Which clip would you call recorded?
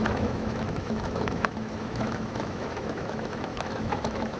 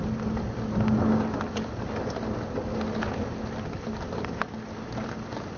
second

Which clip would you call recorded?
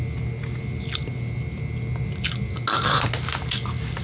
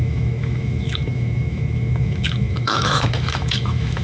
first